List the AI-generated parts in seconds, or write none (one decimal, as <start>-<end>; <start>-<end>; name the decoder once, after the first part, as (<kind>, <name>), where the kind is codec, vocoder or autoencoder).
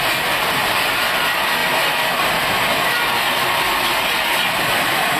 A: 0.0-1.6 (vocoder, BigVGAN v2); 3.3-5.2